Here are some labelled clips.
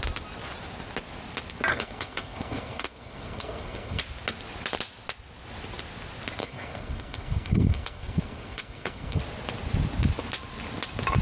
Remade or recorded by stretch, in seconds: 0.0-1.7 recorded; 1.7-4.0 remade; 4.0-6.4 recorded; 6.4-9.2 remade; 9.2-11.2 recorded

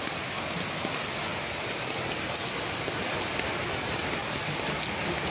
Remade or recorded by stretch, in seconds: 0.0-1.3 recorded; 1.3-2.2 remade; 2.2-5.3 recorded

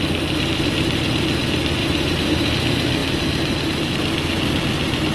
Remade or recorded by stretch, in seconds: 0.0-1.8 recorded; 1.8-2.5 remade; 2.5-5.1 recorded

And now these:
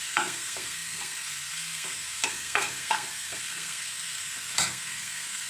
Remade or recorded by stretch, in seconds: 0.0-5.5 remade

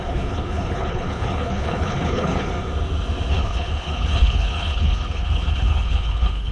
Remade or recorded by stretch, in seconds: 0.0-2.5 remade; 2.5-3.3 recorded; 3.3-6.5 remade